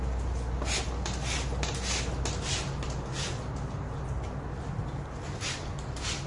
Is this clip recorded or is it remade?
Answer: recorded